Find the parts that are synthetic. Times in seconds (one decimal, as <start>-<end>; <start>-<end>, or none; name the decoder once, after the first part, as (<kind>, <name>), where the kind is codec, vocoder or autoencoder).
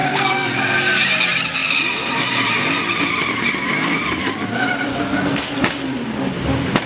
0.0-0.6 (codec, SNAC); 4.9-5.6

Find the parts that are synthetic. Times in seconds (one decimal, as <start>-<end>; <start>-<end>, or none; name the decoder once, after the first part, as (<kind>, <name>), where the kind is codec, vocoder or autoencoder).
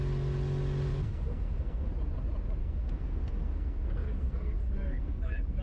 0.9-1.9 (codec, SNAC); 2.6-5.6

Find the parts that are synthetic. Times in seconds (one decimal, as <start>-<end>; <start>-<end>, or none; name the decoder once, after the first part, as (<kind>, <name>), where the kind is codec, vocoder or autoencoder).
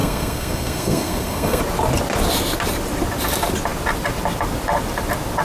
0.0-1.6 (codec, SNAC)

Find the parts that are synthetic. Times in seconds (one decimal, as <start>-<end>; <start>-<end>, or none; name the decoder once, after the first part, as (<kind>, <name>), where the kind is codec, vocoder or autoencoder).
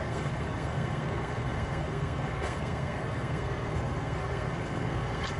0.0-5.4 (codec, SNAC)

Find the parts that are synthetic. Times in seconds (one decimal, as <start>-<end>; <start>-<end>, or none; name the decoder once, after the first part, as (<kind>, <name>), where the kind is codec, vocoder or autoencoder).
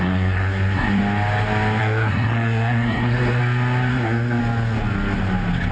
0.0-1.0 (codec, SNAC); 1.8-3.4; 3.9-4.4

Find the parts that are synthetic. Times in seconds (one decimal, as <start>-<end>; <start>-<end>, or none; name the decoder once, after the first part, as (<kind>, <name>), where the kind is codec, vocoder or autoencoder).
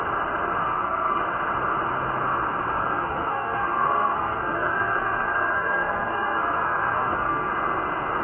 0.6-1.2 (codec, SNAC); 2.8-7.5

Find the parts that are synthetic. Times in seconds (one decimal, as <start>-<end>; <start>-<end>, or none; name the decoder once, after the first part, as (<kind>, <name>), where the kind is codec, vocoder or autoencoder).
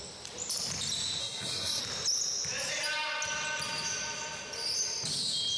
1.2-1.8 (codec, SNAC)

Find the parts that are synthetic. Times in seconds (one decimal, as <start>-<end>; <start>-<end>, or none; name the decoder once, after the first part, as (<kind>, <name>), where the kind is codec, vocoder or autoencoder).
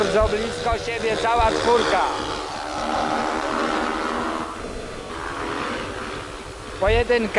4.6-5.1 (codec, SNAC)